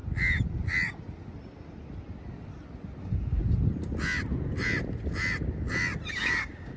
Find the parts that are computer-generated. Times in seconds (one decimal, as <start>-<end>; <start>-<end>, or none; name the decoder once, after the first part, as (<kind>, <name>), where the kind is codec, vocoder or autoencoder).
3.0-3.4 (codec, DAC); 6.1-6.8